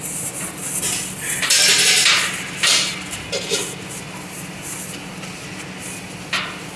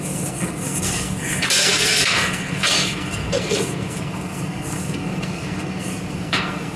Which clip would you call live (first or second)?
first